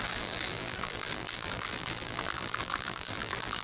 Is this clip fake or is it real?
fake